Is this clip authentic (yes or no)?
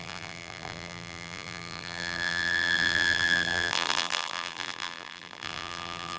no